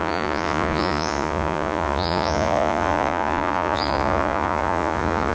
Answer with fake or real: fake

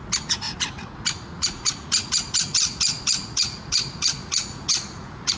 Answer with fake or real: fake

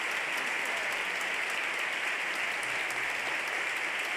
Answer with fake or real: real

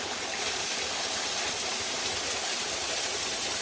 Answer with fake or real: real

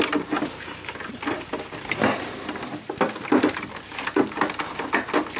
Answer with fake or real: real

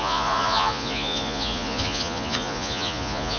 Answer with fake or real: fake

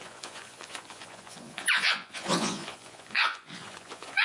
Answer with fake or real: fake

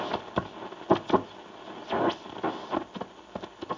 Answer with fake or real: real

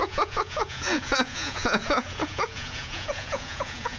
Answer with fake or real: fake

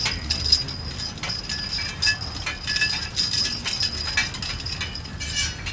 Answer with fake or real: real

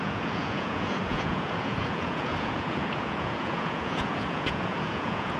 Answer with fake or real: fake